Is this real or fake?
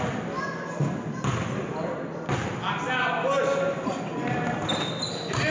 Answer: real